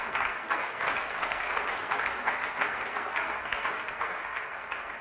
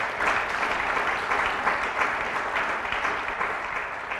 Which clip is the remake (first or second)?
first